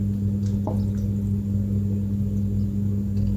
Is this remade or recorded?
recorded